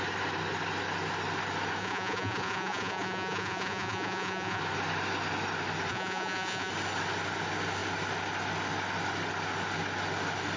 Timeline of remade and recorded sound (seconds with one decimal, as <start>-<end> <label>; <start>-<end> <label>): 0.0-1.8 recorded; 1.8-4.6 remade; 4.6-5.9 recorded; 5.9-6.7 remade; 6.7-10.6 recorded